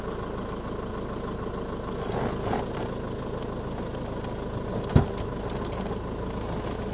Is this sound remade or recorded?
recorded